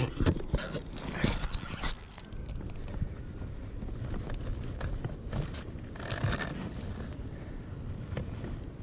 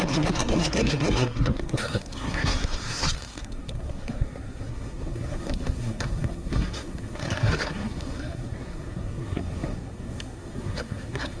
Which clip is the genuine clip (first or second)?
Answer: first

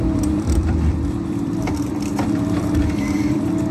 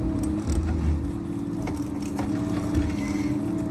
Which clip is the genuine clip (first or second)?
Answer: second